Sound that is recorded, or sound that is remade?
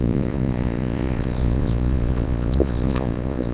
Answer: remade